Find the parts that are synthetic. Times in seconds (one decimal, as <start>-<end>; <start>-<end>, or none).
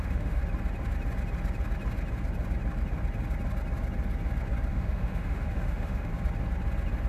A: 0.0-0.4; 4.7-6.1